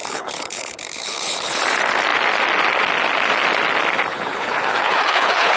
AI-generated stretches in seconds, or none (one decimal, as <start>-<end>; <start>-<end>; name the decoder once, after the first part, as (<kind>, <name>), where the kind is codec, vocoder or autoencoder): 0.0-1.6 (codec, HILCodec); 4.1-5.6